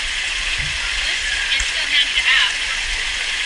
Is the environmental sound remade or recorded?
remade